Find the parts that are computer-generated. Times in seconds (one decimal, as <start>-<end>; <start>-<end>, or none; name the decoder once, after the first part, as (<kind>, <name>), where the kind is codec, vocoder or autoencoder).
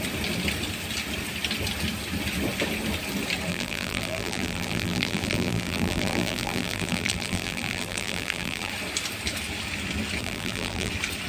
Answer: 3.5-8.7 (vocoder, BigVGAN v2); 10.2-10.9